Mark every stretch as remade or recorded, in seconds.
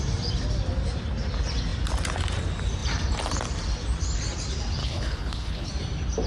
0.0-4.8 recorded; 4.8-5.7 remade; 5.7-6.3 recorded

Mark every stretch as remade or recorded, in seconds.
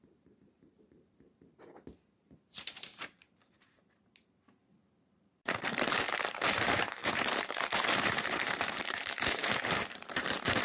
0.0-10.6 remade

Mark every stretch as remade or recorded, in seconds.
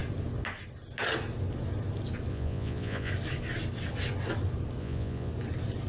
0.0-2.3 recorded; 2.3-3.1 remade; 3.1-4.8 recorded; 4.8-5.3 remade; 5.3-5.9 recorded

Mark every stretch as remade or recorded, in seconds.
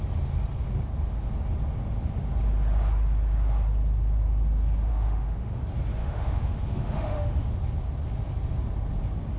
0.0-4.9 recorded; 4.9-5.6 remade; 5.6-6.0 recorded; 6.0-7.6 remade; 7.6-9.4 recorded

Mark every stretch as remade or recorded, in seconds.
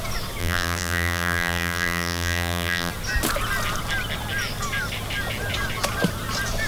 0.0-0.4 recorded; 0.4-2.9 remade; 2.9-6.7 recorded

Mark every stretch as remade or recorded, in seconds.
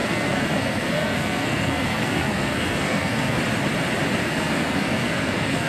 0.0-3.4 remade; 3.4-4.2 recorded; 4.2-5.7 remade